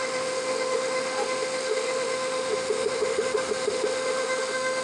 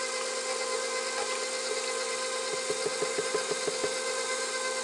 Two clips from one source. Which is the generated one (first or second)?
first